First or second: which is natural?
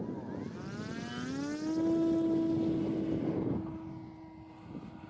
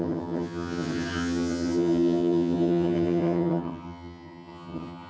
first